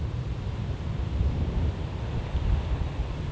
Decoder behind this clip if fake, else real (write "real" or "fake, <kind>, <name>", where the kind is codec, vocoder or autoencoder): real